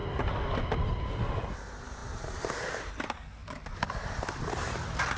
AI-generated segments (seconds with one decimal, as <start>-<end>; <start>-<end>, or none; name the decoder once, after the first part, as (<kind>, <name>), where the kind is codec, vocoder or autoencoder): none